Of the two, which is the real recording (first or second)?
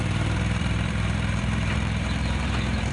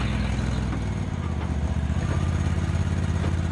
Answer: second